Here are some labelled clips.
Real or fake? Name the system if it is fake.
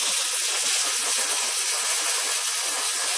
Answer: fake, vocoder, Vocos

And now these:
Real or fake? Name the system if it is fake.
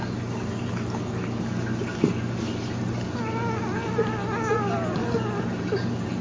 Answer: real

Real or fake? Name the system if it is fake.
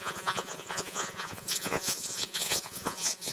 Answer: fake, vocoder, Vocos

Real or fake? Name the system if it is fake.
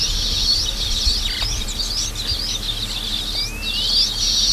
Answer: real